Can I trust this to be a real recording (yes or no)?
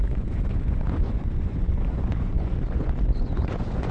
no